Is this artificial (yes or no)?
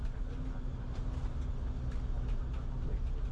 no